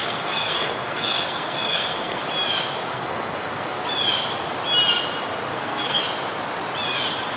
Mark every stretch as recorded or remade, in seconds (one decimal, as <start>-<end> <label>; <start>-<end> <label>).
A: 0.0-2.2 remade; 2.2-2.9 recorded; 2.9-3.8 remade; 3.8-5.5 recorded; 5.5-6.0 remade; 6.0-7.4 recorded